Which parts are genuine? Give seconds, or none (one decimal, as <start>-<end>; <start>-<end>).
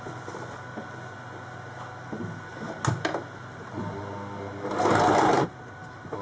0.0-6.2